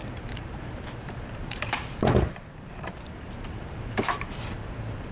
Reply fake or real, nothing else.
fake